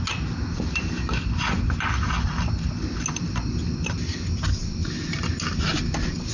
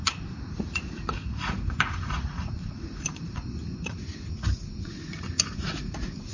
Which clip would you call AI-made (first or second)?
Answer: second